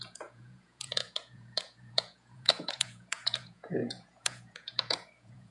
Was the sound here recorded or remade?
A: remade